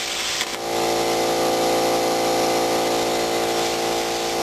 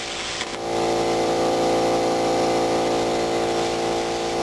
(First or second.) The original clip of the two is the first